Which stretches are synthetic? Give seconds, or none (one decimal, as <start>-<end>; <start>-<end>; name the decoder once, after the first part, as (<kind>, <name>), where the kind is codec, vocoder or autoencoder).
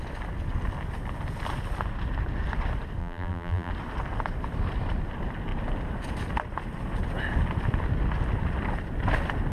3.0-3.7 (vocoder, BigVGAN v2)